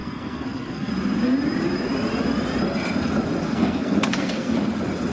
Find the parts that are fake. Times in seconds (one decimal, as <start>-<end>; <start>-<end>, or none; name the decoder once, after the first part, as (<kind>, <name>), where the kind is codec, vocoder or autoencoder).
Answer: 0.0-0.9 (codec, SNAC); 3.4-4.5